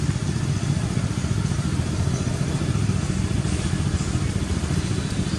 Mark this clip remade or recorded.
recorded